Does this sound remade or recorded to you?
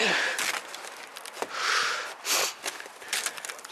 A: remade